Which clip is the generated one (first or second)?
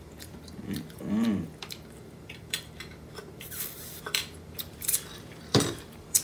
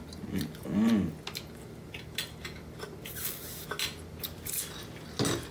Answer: first